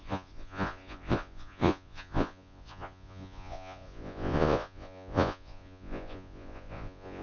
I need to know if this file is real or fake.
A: fake